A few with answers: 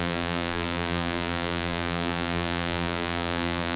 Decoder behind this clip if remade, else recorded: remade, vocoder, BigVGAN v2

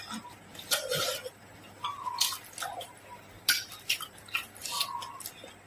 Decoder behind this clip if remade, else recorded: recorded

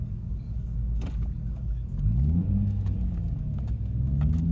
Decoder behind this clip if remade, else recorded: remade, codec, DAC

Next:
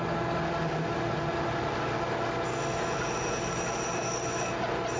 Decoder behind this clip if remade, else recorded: recorded